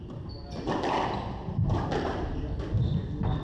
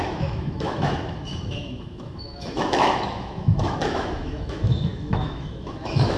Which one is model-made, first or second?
second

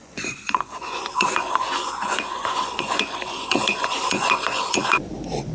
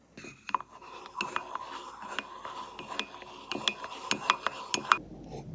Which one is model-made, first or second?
first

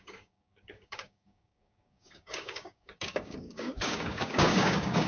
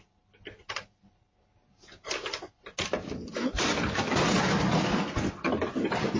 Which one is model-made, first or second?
first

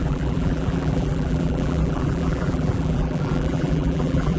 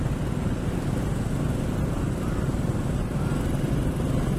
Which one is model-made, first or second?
first